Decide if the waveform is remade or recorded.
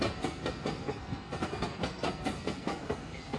remade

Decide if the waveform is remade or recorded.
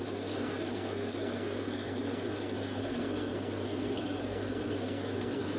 remade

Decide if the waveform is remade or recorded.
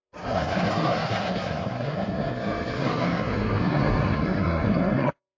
remade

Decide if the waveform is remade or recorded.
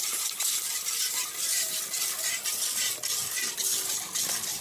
recorded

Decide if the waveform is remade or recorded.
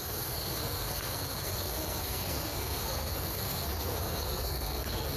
remade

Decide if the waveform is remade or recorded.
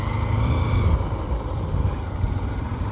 recorded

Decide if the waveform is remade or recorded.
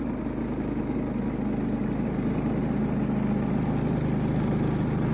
recorded